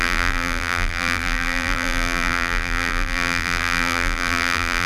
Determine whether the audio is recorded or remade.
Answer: remade